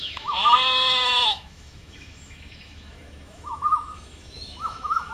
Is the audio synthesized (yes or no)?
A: yes